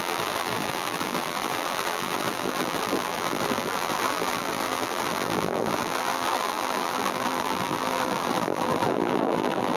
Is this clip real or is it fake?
fake